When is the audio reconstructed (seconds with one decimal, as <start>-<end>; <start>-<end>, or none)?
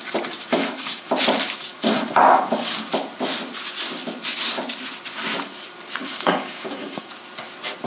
0.5-1.1; 1.7-2.9; 6.0-7.1